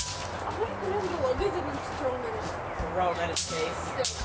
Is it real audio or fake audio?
real